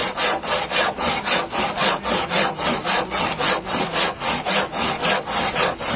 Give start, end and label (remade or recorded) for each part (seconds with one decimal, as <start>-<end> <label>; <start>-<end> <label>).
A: 0.0-6.0 recorded